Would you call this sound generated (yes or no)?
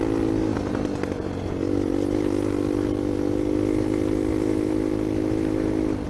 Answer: no